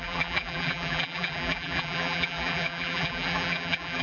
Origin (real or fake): fake